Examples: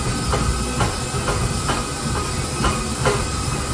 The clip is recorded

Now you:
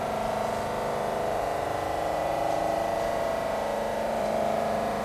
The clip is remade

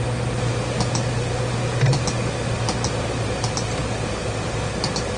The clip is recorded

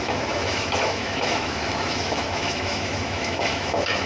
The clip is remade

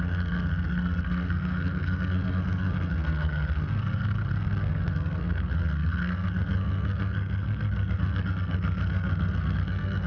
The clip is remade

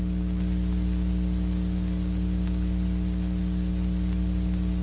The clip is recorded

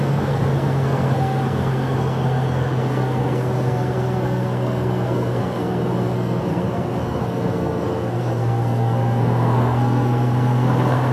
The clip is remade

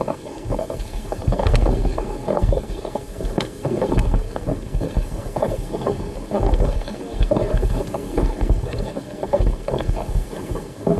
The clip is remade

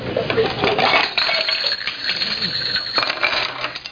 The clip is recorded